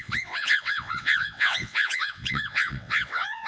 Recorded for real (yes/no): no